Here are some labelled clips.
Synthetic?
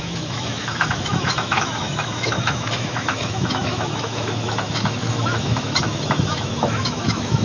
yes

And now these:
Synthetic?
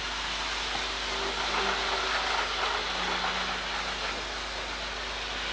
no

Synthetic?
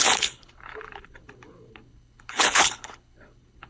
yes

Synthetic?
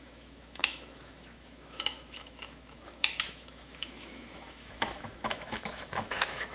yes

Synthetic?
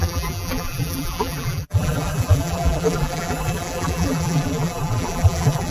yes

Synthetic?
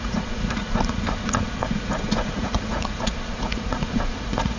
yes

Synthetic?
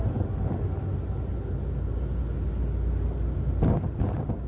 no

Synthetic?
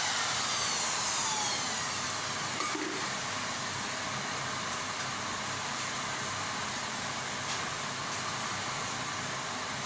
no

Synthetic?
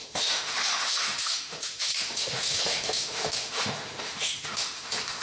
yes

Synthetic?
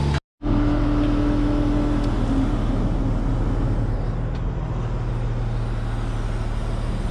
no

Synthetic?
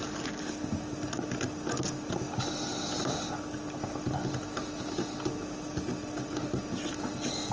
no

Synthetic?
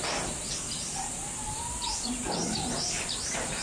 no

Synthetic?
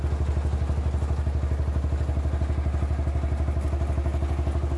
no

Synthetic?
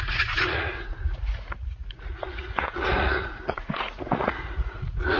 yes